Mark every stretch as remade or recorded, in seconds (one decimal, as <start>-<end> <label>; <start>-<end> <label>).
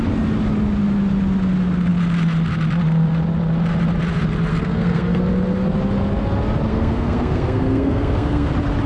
0.0-4.5 recorded; 4.5-5.2 remade; 5.2-6.7 recorded; 6.7-8.5 remade; 8.5-8.9 recorded